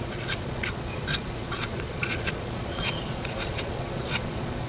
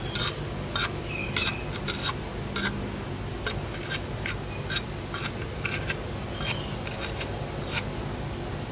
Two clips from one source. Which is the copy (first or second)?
first